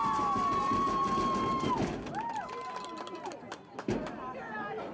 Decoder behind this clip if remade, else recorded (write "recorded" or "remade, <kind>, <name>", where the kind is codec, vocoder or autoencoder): recorded